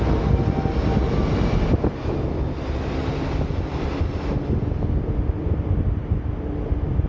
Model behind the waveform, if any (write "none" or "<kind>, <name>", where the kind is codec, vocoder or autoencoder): none